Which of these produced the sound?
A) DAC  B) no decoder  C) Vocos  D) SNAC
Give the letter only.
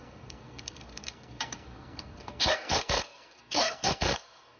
D